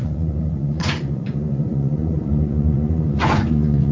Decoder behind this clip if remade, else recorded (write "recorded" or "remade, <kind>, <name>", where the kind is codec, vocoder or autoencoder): remade, vocoder, Vocos